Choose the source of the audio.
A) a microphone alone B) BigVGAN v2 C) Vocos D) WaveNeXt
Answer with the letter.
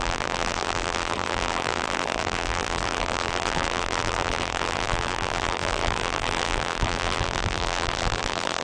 B